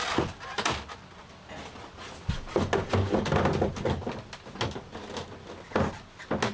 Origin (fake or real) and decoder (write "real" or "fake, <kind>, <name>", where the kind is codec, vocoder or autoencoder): real